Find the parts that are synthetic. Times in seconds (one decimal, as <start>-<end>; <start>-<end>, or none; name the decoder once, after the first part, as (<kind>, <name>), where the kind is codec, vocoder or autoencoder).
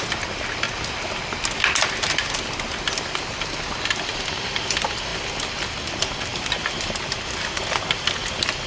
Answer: none